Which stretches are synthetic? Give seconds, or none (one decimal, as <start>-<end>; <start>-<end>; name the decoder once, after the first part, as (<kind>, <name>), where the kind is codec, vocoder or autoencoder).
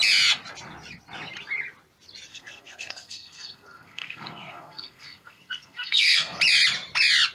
2.3-6.4 (codec, SNAC)